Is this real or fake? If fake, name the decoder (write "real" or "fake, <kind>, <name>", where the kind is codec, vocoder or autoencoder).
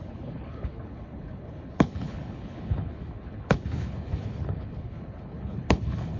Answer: fake, codec, HILCodec